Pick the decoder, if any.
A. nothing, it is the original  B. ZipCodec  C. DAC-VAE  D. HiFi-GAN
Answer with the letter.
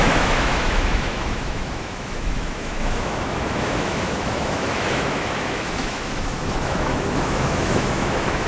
C